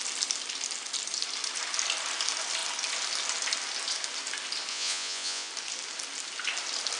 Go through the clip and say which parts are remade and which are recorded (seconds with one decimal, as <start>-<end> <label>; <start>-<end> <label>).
0.0-4.7 recorded; 4.7-5.5 remade; 5.5-7.0 recorded